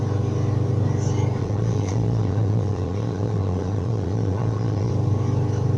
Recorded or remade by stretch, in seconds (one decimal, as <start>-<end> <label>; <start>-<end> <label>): 0.0-1.4 recorded; 1.4-4.9 remade; 4.9-5.8 recorded